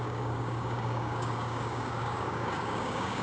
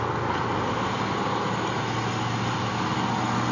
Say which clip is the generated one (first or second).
first